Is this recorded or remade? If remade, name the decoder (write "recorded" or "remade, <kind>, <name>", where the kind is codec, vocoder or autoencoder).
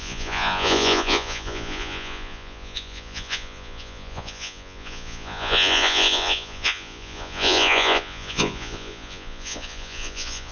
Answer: remade, vocoder, Vocos